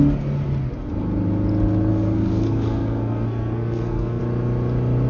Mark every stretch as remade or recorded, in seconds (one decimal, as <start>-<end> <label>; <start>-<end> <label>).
0.0-1.9 recorded; 1.9-4.2 remade; 4.2-5.1 recorded